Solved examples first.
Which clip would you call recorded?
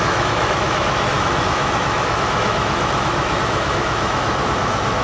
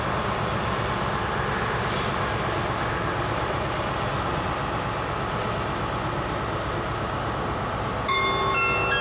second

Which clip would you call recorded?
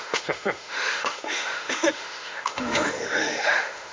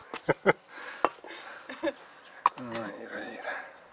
second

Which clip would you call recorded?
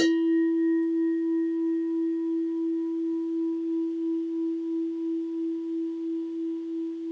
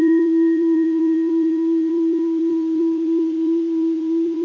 first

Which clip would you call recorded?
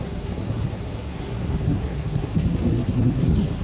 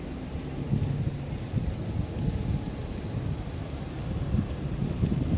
second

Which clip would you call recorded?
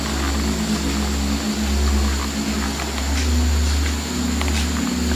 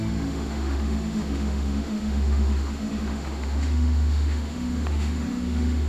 first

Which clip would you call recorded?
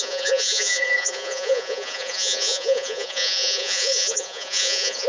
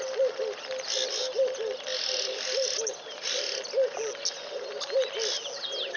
second